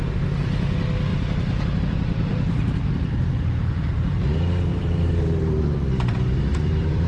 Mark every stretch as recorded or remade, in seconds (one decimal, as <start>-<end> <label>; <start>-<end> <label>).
0.0-2.3 recorded; 2.3-4.2 remade; 4.2-4.7 recorded; 4.7-7.1 remade